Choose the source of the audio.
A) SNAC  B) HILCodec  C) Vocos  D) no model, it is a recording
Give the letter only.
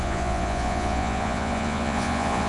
C